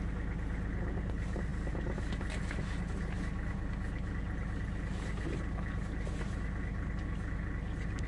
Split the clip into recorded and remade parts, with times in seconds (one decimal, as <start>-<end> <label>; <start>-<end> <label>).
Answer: 0.0-8.1 recorded